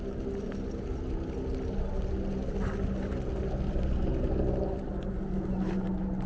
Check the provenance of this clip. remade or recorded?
recorded